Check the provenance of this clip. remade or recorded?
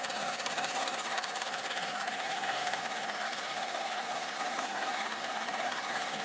remade